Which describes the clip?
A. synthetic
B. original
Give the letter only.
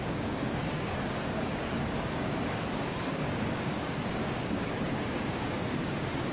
A